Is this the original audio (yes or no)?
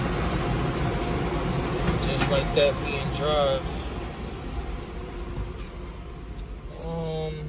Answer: yes